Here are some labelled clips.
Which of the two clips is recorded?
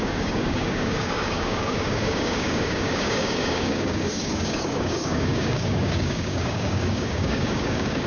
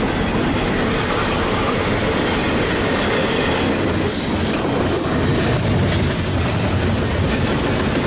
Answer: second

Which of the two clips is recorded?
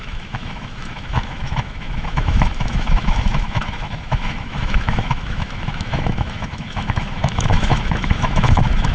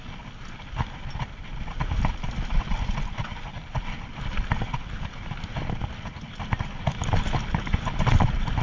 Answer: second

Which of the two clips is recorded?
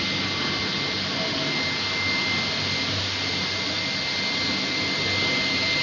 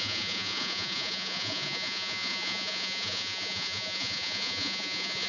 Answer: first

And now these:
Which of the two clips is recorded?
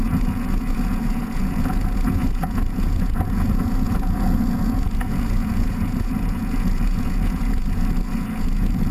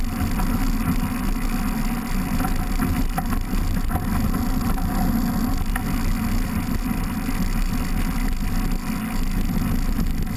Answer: second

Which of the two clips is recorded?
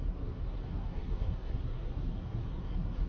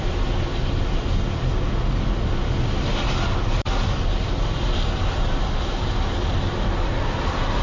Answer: second